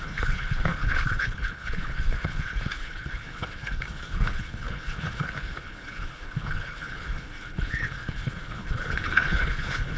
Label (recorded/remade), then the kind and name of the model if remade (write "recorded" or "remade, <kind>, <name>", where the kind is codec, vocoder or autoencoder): remade, codec, HILCodec